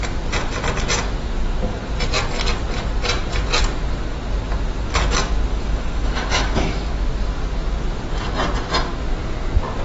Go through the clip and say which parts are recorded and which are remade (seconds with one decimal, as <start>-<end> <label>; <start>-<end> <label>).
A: 0.0-5.5 recorded; 5.5-6.9 remade; 6.9-9.8 recorded